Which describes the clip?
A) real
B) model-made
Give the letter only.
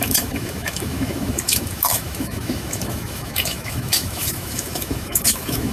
B